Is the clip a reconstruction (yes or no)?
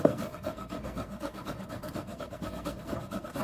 yes